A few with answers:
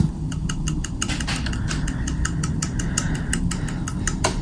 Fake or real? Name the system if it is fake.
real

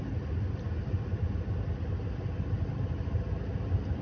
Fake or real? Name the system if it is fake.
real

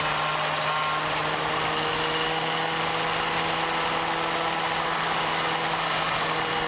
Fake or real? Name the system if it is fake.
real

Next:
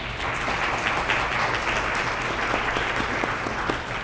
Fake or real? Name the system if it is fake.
real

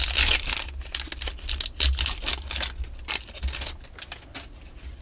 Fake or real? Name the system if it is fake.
real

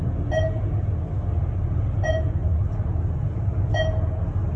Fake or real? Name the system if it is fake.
real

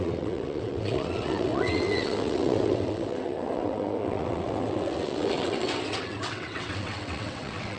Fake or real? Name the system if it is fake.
fake, vocoder, WaveNeXt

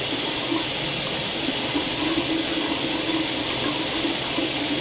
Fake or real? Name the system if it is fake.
real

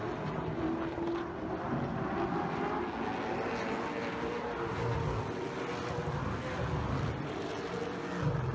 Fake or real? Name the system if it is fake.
real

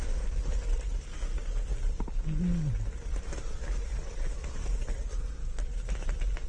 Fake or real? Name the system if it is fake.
real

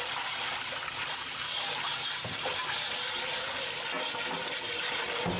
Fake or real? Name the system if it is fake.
real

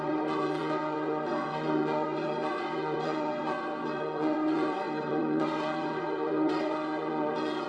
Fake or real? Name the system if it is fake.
fake, vocoder, WaveNeXt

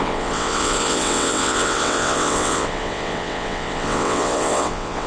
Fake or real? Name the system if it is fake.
fake, vocoder, WaveNeXt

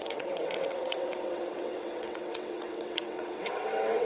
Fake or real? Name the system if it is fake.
fake, vocoder, WaveNeXt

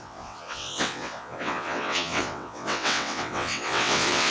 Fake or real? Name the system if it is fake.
fake, vocoder, WaveNeXt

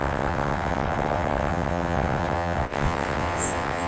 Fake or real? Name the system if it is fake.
fake, vocoder, WaveNeXt